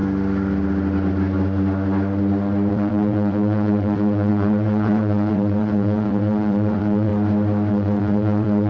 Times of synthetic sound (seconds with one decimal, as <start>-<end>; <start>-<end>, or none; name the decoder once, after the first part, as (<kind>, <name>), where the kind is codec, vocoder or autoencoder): 2.7-7.1 (vocoder, WaveNeXt); 7.7-8.7